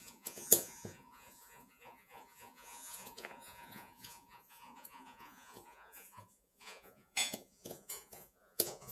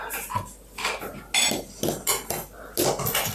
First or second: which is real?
second